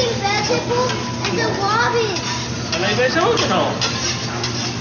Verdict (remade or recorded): recorded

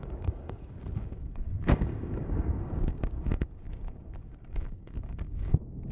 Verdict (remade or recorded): remade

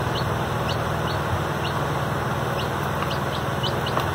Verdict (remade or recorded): recorded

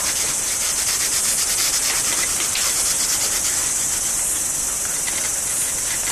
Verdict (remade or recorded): recorded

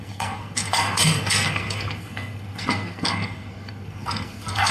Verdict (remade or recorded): remade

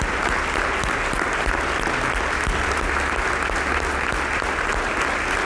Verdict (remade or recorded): recorded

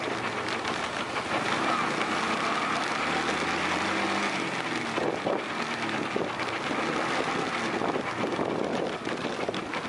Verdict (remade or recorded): recorded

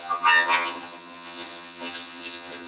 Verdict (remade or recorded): remade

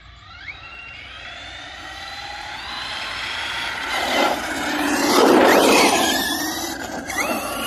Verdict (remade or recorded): remade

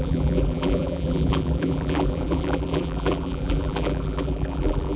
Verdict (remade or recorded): remade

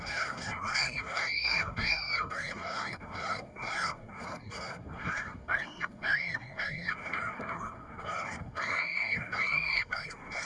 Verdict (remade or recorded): remade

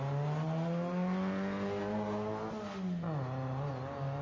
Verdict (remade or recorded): recorded